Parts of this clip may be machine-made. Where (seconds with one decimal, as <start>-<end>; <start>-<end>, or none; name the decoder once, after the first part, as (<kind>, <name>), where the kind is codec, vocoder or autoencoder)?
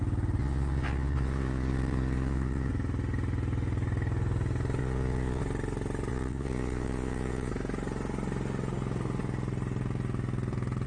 0.4-2.7 (vocoder, Vocos); 4.8-5.4; 6.1-7.5